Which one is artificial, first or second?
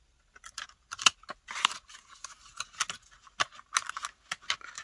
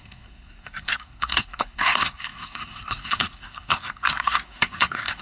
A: second